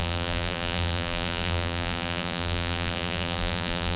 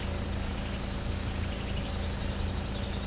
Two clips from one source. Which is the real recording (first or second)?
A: second